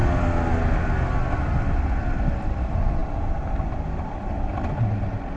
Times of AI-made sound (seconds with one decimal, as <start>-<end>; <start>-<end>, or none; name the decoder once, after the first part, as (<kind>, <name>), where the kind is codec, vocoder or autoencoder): none

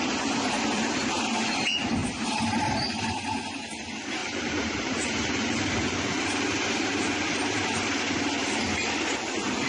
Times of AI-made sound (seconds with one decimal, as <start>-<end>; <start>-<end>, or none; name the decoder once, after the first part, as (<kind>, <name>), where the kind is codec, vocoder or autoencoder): 2.0-2.6 (vocoder, BigVGAN v2); 4.2-8.7

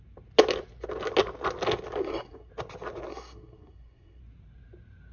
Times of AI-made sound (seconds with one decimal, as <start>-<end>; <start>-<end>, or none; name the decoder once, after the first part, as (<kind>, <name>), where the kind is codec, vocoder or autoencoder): 2.0-2.5 (codec, SNAC); 3.1-4.2

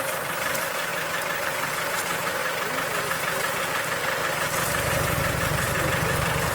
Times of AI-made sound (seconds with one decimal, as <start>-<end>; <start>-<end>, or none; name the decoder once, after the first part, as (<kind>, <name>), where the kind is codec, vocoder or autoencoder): 0.0-2.4 (vocoder, BigVGAN v2); 3.6-6.5

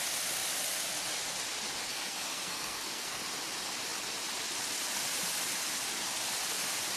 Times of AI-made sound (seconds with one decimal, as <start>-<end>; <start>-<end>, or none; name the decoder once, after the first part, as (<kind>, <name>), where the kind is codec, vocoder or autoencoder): 1.9-3.2 (codec, SNAC)

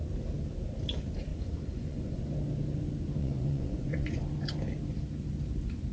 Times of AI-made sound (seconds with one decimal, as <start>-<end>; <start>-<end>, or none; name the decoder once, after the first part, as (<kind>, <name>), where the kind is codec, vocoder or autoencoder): 1.3-2.2 (vocoder, Vocos); 3.2-4.2

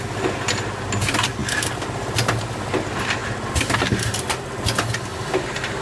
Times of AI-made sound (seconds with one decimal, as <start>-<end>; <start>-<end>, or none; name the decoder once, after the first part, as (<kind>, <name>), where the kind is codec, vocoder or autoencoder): 5.1-5.8 (vocoder, BigVGAN v2)